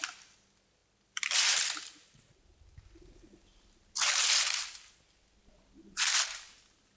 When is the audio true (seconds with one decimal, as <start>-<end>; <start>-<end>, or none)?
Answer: 0.0-7.0